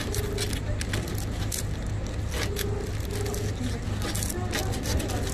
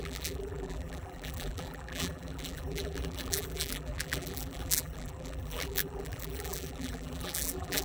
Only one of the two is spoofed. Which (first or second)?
second